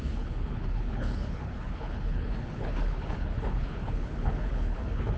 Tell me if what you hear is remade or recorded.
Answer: remade